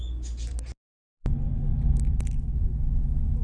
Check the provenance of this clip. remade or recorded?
recorded